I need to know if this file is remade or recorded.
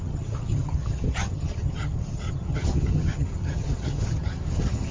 remade